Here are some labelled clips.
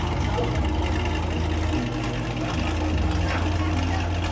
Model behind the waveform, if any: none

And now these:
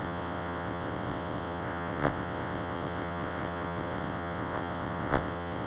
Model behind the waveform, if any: vocoder, WaveNeXt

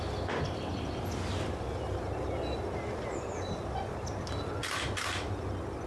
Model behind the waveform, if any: none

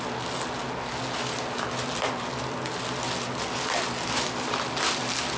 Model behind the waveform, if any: none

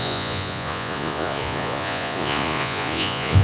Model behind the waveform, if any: vocoder, Vocos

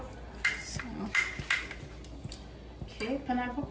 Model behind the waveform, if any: none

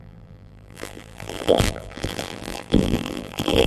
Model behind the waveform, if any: vocoder, BigVGAN v2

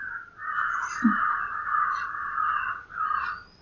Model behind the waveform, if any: none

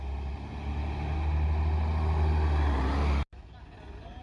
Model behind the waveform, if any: none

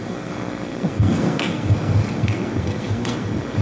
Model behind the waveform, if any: codec, SNAC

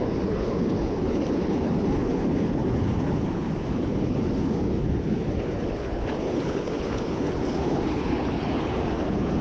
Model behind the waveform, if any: codec, HILCodec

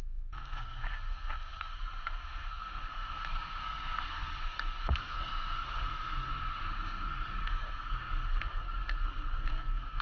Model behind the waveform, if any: codec, SNAC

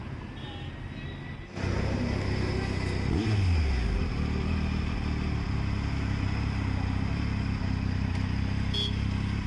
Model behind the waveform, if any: none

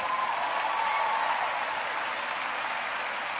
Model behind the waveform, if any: none